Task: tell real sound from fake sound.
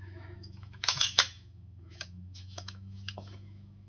fake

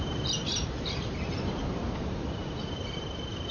fake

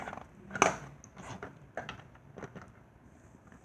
real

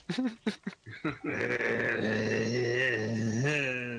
real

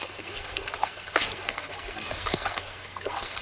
fake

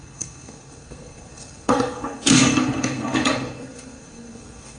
fake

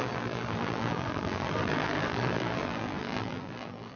fake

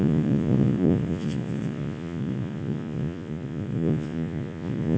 fake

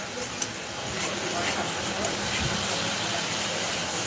real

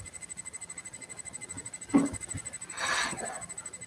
real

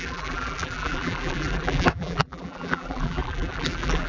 fake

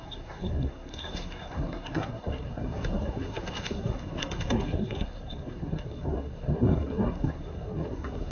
fake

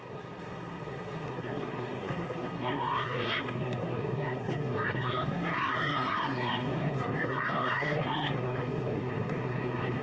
fake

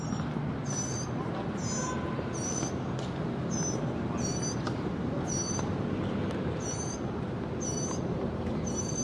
real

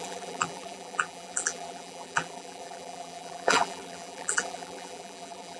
fake